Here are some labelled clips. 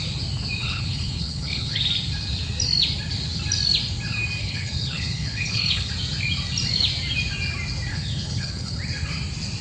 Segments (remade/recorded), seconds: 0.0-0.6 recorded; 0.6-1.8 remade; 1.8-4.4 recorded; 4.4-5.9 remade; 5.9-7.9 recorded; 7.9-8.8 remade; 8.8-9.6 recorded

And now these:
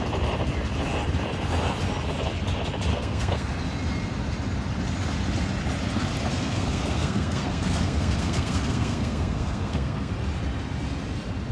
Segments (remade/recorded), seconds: 0.0-2.9 recorded; 2.9-3.5 remade; 3.5-6.3 recorded; 6.3-10.1 remade; 10.1-11.5 recorded

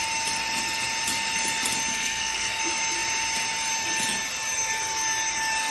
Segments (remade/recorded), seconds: 0.0-1.9 recorded; 1.9-2.6 remade; 2.6-5.7 recorded

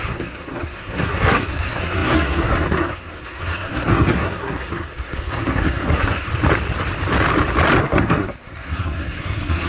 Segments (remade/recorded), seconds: 0.0-6.3 remade; 6.3-7.8 recorded; 7.8-9.7 remade

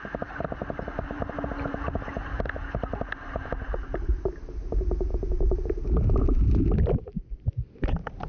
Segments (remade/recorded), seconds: 0.0-8.3 recorded